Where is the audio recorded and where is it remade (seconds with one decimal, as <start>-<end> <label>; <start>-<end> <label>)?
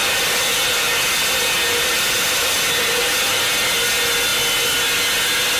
0.0-3.4 remade; 3.4-5.6 recorded